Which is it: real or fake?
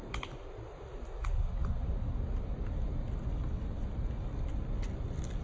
real